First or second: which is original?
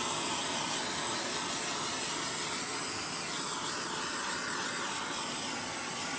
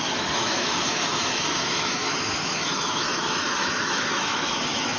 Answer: first